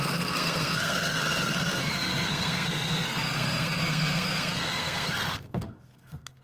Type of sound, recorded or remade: remade